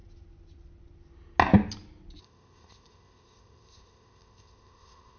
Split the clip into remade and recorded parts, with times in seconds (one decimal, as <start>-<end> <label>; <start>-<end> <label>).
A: 0.0-2.2 recorded; 2.2-5.2 remade